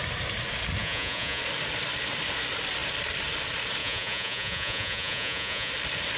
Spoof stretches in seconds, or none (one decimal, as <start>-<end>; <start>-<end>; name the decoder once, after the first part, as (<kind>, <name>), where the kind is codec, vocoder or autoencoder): 0.8-1.4 (vocoder, Vocos); 3.8-5.7